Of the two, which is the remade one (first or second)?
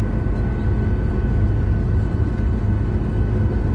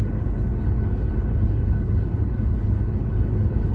second